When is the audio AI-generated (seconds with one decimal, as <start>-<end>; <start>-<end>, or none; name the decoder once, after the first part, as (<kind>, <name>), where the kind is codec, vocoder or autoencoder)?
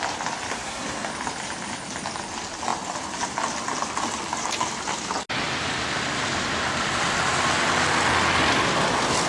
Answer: 0.5-1.1 (codec, SNAC)